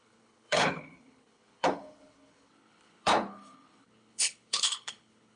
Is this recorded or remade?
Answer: remade